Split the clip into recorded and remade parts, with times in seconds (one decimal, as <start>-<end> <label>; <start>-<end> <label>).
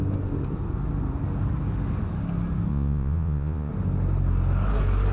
0.0-2.7 recorded; 2.7-3.7 remade; 3.7-5.1 recorded